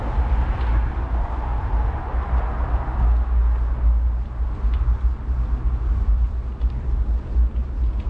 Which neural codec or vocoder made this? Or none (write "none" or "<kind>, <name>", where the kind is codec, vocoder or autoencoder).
none